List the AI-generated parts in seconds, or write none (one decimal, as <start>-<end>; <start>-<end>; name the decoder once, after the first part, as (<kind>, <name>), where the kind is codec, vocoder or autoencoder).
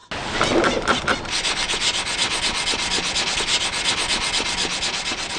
none